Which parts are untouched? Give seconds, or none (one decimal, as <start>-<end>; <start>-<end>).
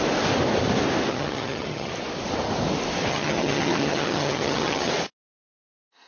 0.0-1.1; 1.9-3.1; 4.9-6.1